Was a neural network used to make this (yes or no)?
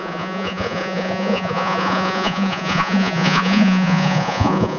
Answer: yes